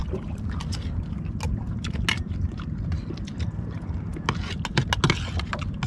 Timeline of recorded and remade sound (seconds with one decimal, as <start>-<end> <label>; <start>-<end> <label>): 0.0-5.9 recorded